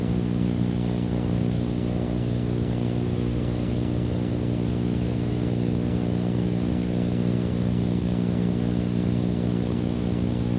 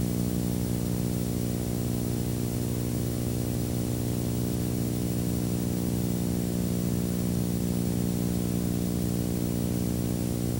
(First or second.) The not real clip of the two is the first